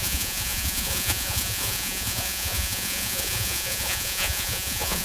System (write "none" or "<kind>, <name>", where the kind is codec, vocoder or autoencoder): vocoder, Vocos